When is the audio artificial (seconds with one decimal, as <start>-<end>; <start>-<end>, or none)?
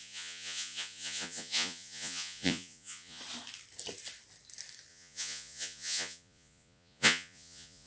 0.0-3.2; 4.9-7.9